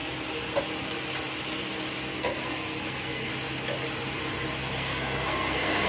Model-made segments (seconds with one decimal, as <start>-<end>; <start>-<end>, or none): 2.1-3.3; 4.6-5.9